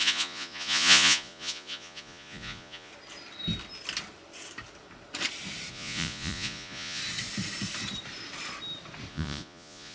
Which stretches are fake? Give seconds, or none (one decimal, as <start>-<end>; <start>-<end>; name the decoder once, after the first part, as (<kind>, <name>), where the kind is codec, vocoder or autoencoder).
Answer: 0.0-2.9 (vocoder, Vocos); 5.7-7.0; 9.1-9.9